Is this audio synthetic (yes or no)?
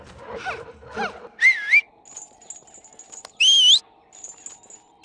no